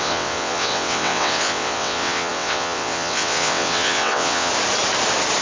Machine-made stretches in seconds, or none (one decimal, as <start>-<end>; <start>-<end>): 0.0-4.5

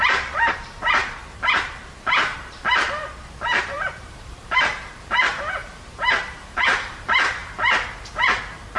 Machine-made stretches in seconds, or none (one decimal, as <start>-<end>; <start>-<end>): 0.0-1.2; 3.6-7.4

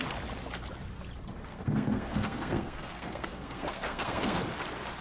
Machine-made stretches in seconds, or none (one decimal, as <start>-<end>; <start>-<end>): 1.4-4.4

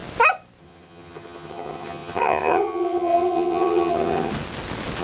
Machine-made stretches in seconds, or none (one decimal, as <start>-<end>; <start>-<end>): 0.6-4.3

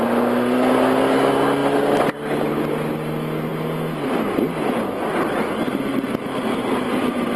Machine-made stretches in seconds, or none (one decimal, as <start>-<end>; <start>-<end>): none

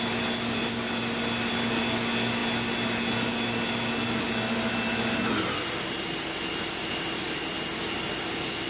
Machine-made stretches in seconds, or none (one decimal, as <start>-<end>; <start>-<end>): none

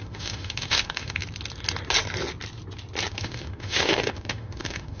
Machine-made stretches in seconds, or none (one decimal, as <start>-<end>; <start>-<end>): 0.0-1.2; 3.1-5.0

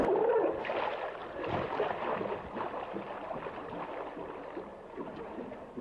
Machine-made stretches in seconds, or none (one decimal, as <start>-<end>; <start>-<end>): 1.2-1.9; 4.7-5.3